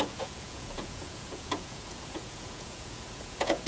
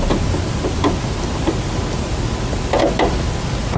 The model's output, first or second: first